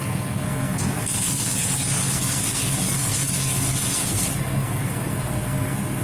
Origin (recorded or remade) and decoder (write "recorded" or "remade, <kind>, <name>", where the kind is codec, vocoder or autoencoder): remade, codec, SNAC